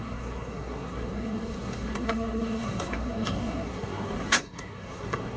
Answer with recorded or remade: remade